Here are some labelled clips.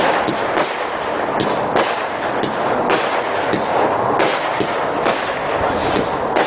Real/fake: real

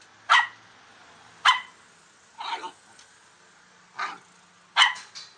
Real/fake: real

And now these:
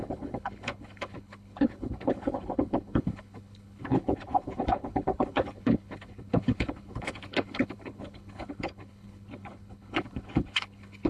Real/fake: fake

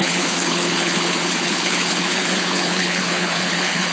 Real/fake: fake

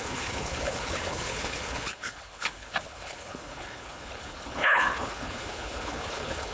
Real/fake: fake